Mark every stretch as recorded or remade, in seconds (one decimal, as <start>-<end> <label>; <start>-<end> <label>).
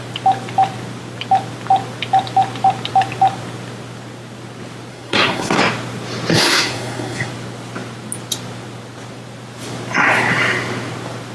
0.0-4.9 recorded; 4.9-5.6 remade; 5.6-6.3 recorded; 6.3-7.3 remade; 7.3-11.3 recorded